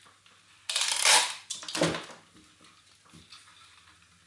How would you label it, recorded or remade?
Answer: recorded